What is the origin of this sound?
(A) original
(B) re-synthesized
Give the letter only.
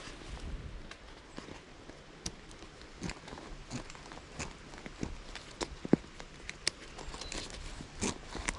A